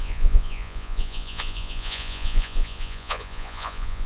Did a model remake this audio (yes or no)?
yes